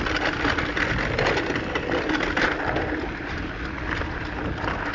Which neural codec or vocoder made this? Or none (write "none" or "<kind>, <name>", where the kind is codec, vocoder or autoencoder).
none